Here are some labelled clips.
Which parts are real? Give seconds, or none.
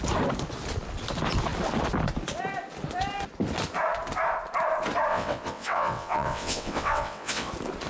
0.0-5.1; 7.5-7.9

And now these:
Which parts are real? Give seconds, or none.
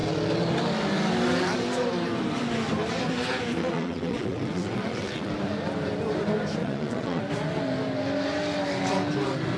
0.0-3.6; 5.3-6.6; 7.2-9.6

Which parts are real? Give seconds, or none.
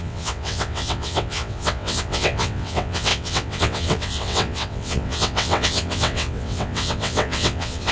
none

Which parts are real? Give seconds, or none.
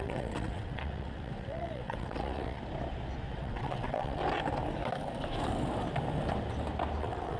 2.6-3.3; 4.2-7.0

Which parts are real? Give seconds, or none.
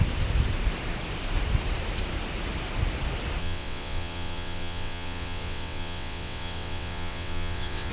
0.0-3.4